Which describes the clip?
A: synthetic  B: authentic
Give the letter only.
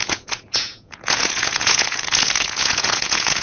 A